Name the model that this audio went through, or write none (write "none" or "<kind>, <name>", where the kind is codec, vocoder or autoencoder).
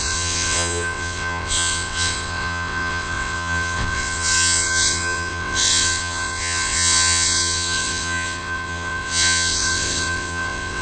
vocoder, WaveNeXt